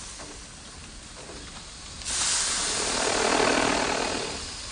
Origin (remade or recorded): recorded